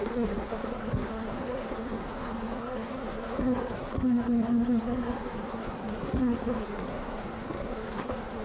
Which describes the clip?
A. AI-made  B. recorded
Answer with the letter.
A